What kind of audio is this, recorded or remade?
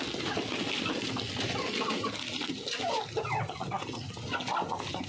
recorded